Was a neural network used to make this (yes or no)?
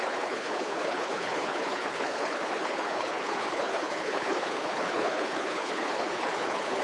yes